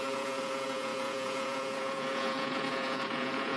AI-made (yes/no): yes